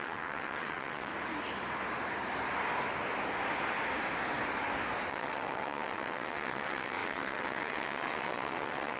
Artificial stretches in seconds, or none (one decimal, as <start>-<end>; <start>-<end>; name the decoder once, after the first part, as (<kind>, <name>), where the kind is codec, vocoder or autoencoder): 0.0-1.1 (vocoder, WaveNeXt); 5.1-9.0